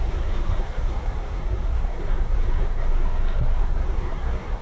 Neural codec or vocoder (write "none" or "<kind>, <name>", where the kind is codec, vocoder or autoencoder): codec, SNAC